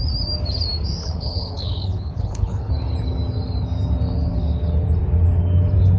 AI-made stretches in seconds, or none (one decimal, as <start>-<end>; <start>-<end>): 1.0-2.7